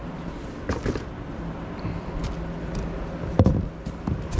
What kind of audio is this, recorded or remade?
recorded